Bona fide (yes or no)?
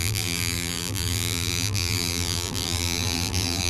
no